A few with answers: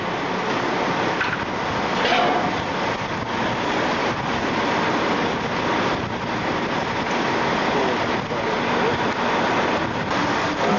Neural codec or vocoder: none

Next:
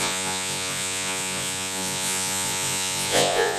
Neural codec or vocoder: vocoder, Vocos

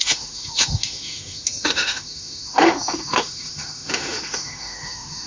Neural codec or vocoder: autoencoder, DAC-VAE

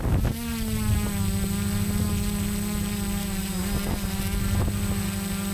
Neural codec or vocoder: none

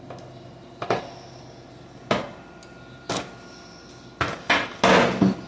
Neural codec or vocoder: none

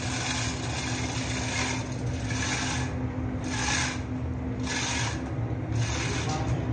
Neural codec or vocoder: none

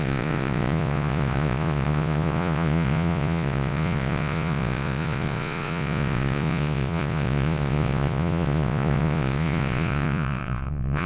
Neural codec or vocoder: vocoder, Vocos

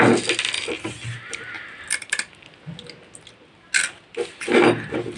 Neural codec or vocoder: none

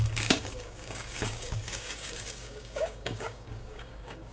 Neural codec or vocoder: codec, DAC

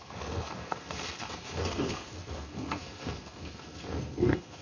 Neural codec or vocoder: codec, SNAC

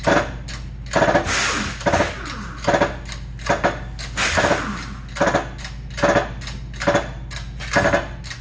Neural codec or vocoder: none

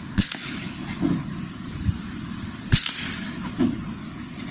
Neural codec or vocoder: none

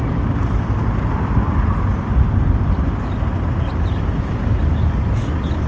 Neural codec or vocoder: none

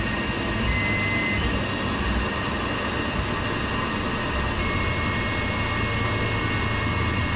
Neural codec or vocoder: none